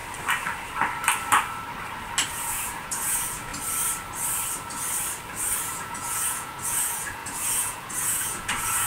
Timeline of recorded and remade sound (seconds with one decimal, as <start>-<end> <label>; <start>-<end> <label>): 0.0-2.3 recorded; 2.3-3.5 remade; 3.5-5.6 recorded; 5.6-8.9 remade